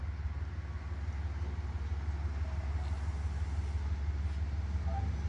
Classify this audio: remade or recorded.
recorded